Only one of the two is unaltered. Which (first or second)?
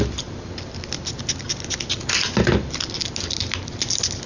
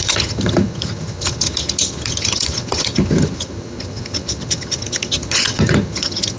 first